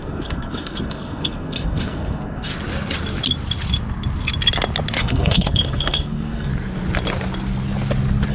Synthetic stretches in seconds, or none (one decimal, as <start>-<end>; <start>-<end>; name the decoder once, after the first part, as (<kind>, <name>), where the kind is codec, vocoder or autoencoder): 0.0-2.5 (codec, SNAC); 5.0-6.5